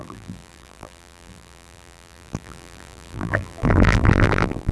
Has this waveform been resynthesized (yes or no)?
yes